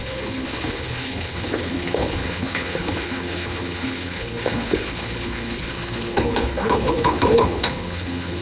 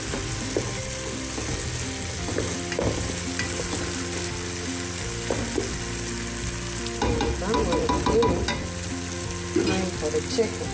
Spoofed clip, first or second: first